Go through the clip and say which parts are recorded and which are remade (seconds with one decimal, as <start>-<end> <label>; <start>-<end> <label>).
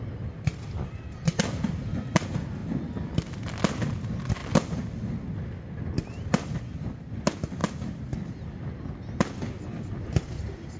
0.0-10.8 recorded